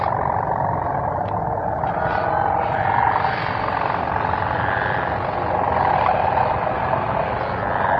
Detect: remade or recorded recorded